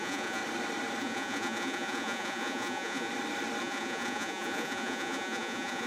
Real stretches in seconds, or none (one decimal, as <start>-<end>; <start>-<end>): 0.4-1.0; 3.1-3.6

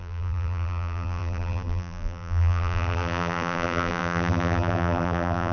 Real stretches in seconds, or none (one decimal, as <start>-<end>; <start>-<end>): none

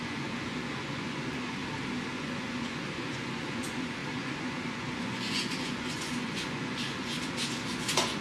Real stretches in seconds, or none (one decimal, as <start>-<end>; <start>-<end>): 1.6-2.2